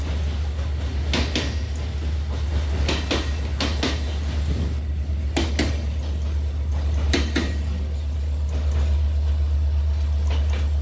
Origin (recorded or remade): recorded